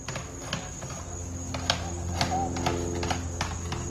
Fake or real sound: real